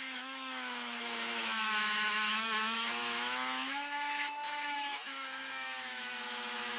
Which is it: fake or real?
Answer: fake